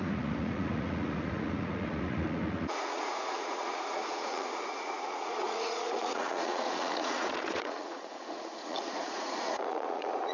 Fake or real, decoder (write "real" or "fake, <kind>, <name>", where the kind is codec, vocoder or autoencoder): fake, vocoder, Vocos